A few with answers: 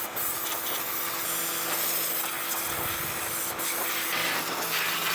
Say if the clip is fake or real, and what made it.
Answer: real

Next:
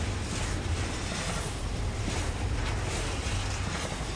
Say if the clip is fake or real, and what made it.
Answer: real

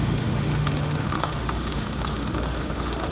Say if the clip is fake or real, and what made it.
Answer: fake, autoencoder, DAC-VAE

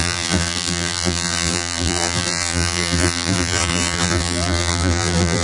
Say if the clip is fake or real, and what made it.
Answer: fake, vocoder, BigVGAN v2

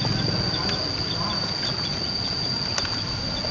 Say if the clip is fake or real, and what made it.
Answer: real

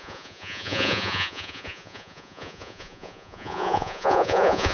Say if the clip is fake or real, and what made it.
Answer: fake, vocoder, Vocos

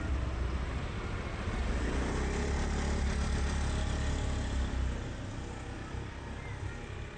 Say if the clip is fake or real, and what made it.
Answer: real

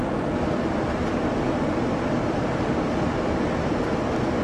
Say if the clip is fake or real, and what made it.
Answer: real